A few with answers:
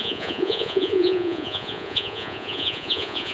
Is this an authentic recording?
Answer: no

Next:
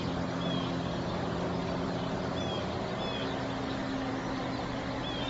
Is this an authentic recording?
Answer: yes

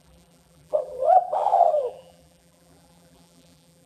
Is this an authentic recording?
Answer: no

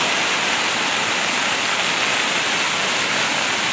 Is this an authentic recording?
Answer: yes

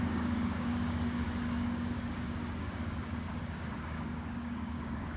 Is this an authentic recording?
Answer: no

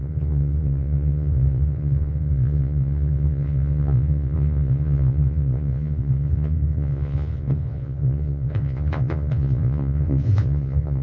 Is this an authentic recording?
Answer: no